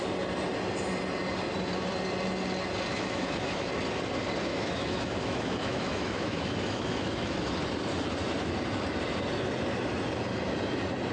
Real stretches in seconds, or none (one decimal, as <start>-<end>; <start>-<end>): 0.0-2.9; 3.7-4.5; 7.5-11.1